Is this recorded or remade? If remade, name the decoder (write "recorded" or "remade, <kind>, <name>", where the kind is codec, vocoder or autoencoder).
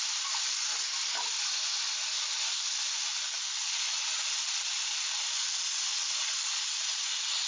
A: recorded